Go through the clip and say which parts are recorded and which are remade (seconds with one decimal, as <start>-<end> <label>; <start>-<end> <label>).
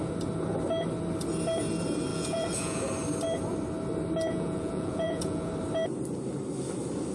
0.0-2.1 recorded; 2.1-2.8 remade; 2.8-4.3 recorded; 4.3-5.5 remade; 5.5-7.1 recorded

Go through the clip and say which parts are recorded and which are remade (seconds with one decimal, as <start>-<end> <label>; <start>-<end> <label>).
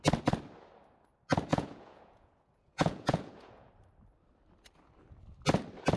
0.0-1.5 recorded; 1.5-3.7 remade; 3.7-6.0 recorded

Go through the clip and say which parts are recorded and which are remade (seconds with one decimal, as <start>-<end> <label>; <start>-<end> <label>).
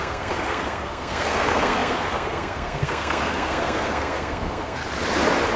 0.0-4.8 remade; 4.8-5.6 recorded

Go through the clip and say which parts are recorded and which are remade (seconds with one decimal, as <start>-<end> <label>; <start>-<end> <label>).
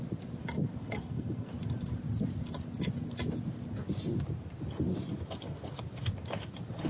0.0-0.8 recorded; 0.8-1.5 remade; 1.5-6.9 recorded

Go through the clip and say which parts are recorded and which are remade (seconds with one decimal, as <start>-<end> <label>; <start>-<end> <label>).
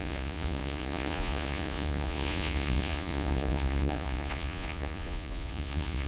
0.0-6.1 remade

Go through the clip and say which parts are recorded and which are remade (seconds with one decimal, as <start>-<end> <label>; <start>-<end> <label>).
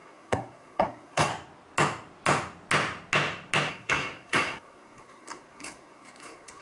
0.0-1.3 remade; 1.3-3.7 recorded; 3.7-6.6 remade